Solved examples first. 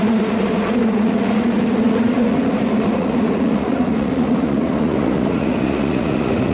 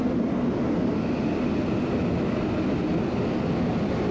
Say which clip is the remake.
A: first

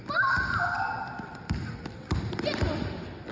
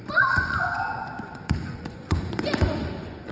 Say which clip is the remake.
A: second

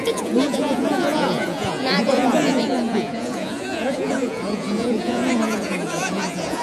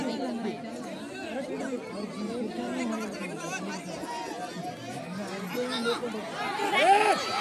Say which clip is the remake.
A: first